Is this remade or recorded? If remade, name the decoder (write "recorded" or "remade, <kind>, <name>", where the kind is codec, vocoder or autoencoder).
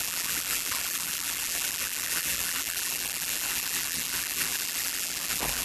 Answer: remade, vocoder, BigVGAN v2